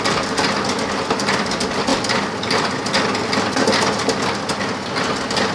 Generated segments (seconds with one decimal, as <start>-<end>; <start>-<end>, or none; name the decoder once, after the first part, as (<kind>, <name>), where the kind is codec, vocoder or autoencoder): none